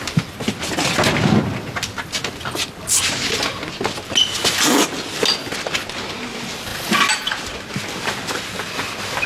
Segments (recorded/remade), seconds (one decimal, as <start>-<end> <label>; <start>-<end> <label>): 0.0-9.3 recorded